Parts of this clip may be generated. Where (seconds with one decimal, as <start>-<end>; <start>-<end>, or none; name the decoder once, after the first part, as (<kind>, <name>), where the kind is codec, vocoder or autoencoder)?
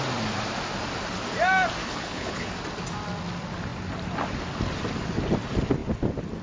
1.8-2.5 (codec, HILCodec)